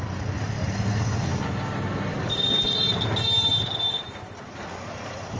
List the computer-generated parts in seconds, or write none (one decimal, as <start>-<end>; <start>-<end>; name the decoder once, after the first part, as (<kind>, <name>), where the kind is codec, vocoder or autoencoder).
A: none